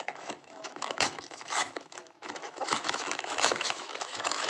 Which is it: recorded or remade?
remade